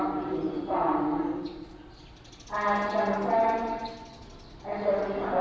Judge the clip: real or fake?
real